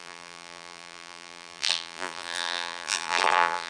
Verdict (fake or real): fake